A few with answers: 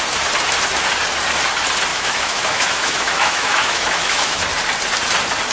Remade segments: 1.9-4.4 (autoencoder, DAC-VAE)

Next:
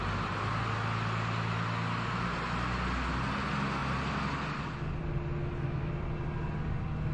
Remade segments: 5.4-5.9 (autoencoder, DAC-VAE)

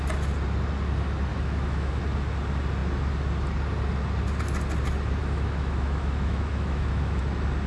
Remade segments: 1.3-2.0 (autoencoder, DAC-VAE); 5.2-7.2

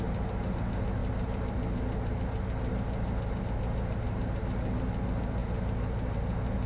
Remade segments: none

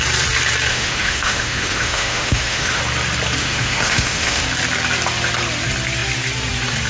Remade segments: 0.7-2.8 (autoencoder, DAC-VAE); 3.4-4.4

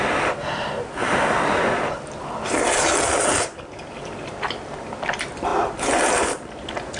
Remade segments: none

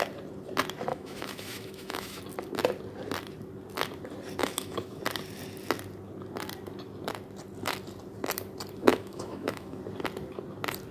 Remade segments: 0.9-2.2 (autoencoder, DAC-VAE); 4.4-5.0; 8.8-9.8

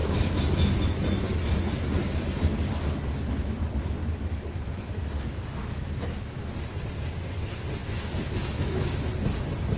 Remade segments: 0.0-1.4 (autoencoder, DAC-VAE); 5.6-6.5; 7.8-8.9